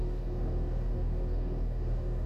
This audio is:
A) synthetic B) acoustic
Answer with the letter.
A